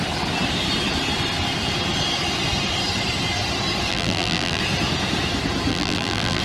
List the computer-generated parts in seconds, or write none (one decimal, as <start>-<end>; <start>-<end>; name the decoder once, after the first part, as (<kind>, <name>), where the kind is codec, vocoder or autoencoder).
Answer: 3.9-4.6 (vocoder, BigVGAN v2); 5.7-6.4